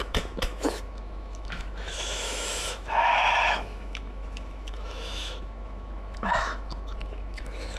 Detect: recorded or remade remade